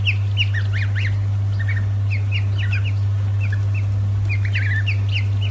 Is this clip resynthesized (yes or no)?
no